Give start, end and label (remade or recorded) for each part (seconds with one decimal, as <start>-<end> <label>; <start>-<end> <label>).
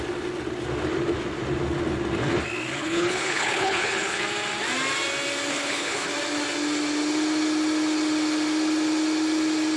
0.0-2.8 recorded; 2.8-4.2 remade; 4.2-5.5 recorded; 5.5-6.1 remade; 6.1-9.8 recorded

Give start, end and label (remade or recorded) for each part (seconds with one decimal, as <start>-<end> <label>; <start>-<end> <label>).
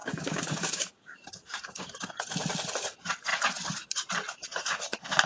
0.0-2.1 remade; 2.1-5.3 recorded